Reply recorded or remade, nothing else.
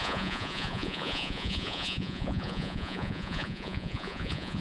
remade